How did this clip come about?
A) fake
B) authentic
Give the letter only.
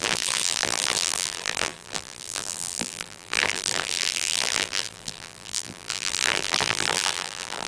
A